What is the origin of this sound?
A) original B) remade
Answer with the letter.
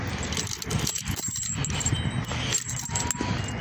A